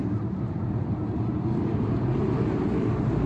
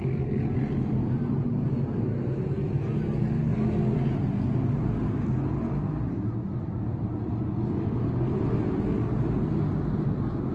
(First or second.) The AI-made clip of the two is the first